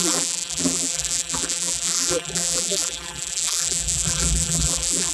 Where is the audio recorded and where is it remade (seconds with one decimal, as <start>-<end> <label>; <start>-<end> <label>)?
0.0-5.1 remade